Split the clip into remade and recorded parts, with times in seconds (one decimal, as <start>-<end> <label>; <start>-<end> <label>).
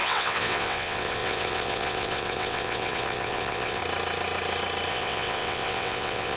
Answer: 0.0-3.8 remade; 3.8-4.9 recorded; 4.9-6.4 remade